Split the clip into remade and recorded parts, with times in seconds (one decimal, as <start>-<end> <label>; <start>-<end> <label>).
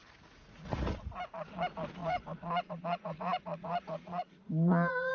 0.0-1.1 remade; 1.1-2.0 recorded; 2.0-5.1 remade